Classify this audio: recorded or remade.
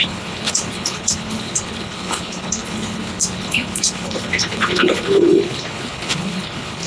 remade